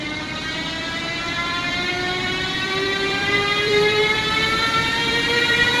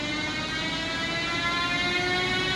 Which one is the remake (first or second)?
first